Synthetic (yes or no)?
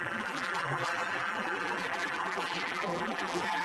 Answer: yes